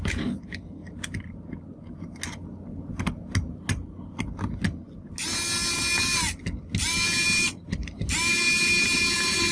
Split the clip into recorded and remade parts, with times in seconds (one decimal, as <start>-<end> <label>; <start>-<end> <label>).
0.0-9.5 recorded